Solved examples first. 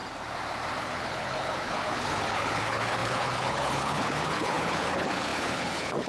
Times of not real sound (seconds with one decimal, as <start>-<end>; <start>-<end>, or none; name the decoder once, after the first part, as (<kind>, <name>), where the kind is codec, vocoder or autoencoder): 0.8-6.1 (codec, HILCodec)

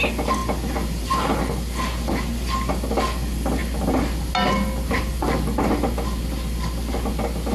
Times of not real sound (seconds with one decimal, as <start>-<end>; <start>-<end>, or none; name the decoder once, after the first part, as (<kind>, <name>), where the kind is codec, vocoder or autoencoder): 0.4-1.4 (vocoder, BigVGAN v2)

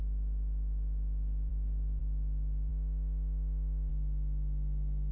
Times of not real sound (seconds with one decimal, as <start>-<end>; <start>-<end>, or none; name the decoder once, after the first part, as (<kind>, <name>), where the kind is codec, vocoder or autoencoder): 0.0-2.7 (autoencoder, DAC-VAE); 3.9-5.1

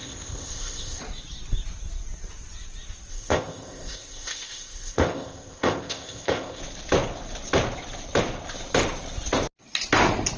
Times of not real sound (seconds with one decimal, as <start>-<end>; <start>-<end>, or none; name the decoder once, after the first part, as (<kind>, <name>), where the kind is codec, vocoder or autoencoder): 0.0-1.0 (codec, ZipCodec); 3.1-6.6

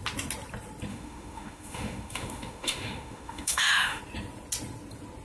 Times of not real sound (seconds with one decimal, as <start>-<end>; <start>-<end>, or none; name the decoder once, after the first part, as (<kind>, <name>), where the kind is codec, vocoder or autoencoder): 0.9-4.0 (autoencoder, DAC-VAE)

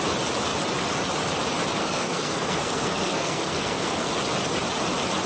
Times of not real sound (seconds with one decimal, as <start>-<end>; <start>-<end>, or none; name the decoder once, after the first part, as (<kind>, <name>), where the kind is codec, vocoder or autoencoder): 1.8-4.1 (codec, SNAC)